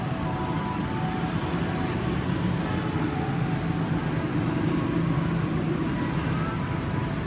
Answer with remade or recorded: recorded